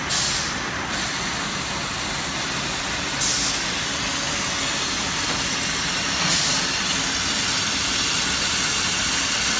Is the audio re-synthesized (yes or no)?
no